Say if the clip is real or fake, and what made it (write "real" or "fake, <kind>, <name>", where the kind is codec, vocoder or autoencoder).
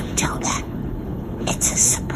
fake, codec, HILCodec